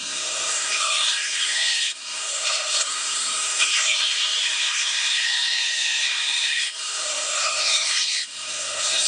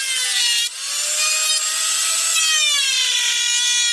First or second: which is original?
second